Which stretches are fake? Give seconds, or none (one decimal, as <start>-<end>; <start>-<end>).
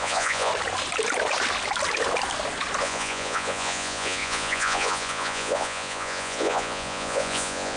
0.0-0.5; 2.8-7.8